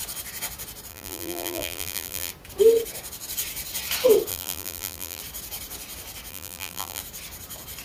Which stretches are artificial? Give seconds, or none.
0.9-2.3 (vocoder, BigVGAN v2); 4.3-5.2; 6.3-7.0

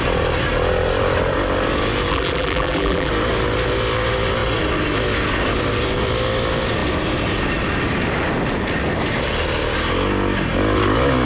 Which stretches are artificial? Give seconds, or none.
2.1-3.1 (vocoder, BigVGAN v2)

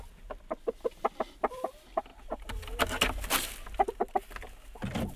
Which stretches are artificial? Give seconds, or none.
none

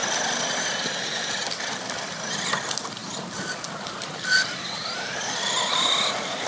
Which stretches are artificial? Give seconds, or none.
2.5-3.0 (vocoder, BigVGAN v2); 3.5-6.5

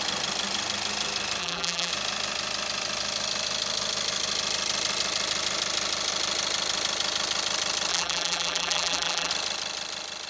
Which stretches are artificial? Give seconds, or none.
1.4-1.9 (vocoder, BigVGAN v2); 7.9-9.3